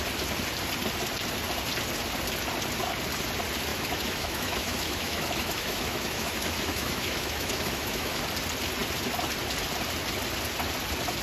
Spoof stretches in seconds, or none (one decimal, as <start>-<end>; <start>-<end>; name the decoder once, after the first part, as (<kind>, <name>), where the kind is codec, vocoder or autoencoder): 3.7-8.2 (autoencoder, DAC-VAE)